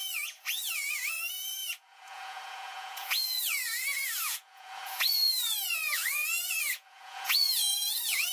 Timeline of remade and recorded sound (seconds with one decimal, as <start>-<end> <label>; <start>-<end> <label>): 0.0-8.3 remade

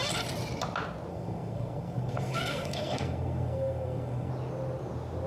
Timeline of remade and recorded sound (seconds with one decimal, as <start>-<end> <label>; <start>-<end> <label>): 0.0-1.1 recorded; 1.1-4.3 remade; 4.3-5.3 recorded

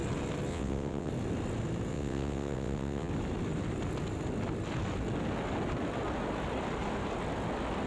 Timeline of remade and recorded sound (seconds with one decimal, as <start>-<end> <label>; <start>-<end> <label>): 0.0-0.5 recorded; 0.5-1.1 remade; 1.1-1.9 recorded; 1.9-3.1 remade; 3.1-7.9 recorded

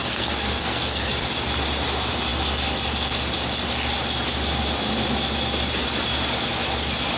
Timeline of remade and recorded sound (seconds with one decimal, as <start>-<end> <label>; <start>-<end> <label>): 0.0-1.1 remade; 1.1-7.2 recorded